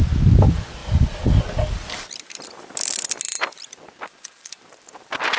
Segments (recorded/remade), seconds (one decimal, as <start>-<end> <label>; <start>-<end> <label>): 0.0-5.4 recorded